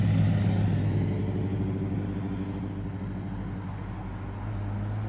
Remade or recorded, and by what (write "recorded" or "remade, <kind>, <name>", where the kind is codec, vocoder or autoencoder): recorded